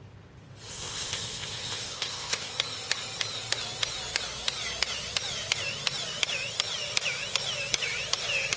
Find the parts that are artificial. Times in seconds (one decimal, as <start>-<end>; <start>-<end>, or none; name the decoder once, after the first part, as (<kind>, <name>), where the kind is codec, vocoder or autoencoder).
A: 0.7-2.5 (codec, ZipCodec)